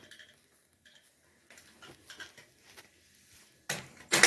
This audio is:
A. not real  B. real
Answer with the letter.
B